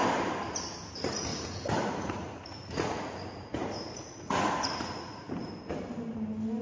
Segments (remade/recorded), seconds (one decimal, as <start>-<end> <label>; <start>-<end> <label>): 0.0-1.3 recorded; 1.3-5.3 remade; 5.3-6.6 recorded